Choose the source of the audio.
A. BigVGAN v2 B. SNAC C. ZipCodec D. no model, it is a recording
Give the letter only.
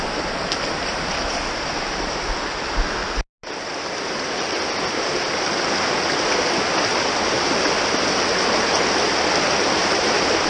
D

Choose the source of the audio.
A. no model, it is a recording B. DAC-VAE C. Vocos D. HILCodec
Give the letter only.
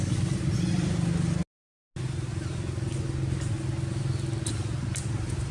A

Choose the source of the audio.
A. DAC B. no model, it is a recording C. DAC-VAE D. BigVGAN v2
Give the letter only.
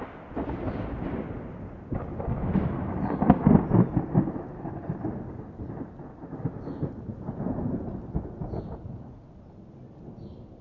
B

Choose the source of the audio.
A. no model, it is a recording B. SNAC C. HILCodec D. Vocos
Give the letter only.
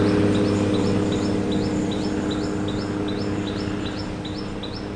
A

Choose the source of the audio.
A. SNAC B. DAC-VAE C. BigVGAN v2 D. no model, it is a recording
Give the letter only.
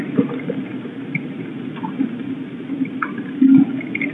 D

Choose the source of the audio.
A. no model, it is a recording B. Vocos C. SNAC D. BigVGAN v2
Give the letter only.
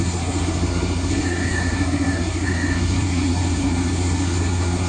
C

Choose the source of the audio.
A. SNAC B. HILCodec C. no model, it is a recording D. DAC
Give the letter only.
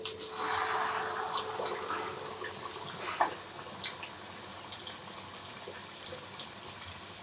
C